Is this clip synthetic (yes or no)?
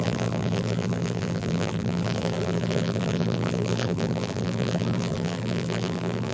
yes